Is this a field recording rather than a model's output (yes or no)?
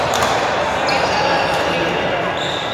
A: yes